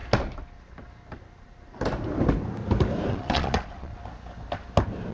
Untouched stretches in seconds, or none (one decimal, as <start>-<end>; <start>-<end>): 0.0-3.1; 3.9-5.1